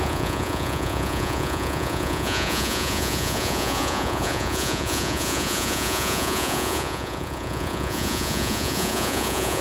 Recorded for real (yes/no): no